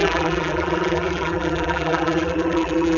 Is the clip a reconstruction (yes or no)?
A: yes